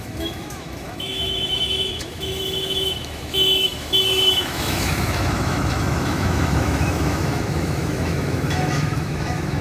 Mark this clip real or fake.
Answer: fake